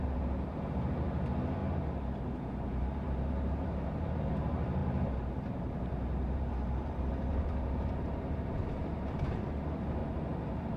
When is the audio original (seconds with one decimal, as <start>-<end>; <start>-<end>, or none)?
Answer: 1.6-2.5; 10.0-10.8